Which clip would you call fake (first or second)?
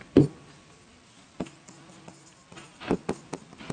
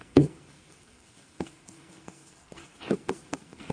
second